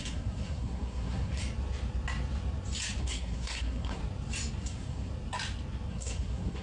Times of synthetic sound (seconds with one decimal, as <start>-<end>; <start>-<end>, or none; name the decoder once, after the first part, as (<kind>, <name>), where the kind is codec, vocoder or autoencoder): 0.0-1.4 (codec, SNAC); 3.0-4.0; 4.6-5.1; 5.9-6.6